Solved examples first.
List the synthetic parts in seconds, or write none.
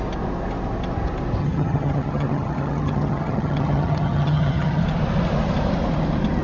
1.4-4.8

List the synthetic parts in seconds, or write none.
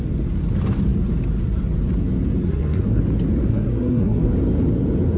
2.4-3.0; 3.5-4.3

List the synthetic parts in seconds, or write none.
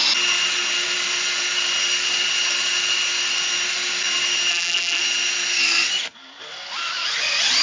4.5-5.0